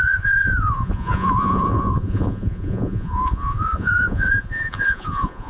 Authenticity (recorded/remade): remade